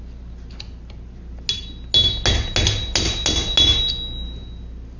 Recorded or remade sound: recorded